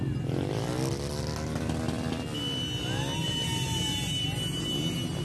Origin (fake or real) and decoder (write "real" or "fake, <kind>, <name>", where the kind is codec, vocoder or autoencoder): real